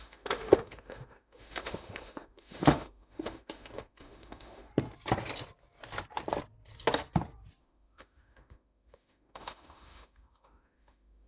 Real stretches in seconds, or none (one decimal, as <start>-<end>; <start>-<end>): 4.7-7.6